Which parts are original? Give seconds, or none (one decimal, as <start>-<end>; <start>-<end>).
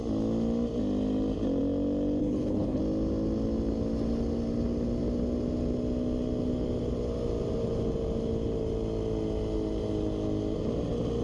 0.0-2.2; 2.8-11.2